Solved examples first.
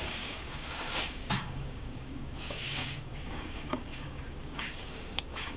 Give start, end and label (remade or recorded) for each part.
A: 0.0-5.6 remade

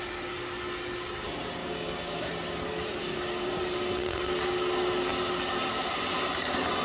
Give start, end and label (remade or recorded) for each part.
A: 0.0-1.6 recorded; 1.6-2.3 remade; 2.3-3.0 recorded; 3.0-3.6 remade; 3.6-6.8 recorded

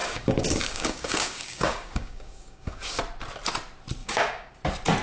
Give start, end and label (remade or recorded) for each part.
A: 0.0-3.0 remade; 3.0-4.0 recorded; 4.0-4.5 remade; 4.5-5.0 recorded